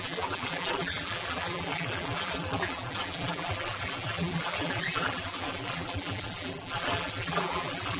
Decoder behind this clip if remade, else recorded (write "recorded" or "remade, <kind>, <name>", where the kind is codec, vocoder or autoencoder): remade, vocoder, BigVGAN v2